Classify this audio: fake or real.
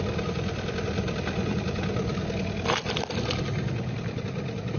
real